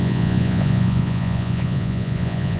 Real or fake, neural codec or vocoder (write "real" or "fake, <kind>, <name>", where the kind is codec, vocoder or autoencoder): fake, vocoder, Vocos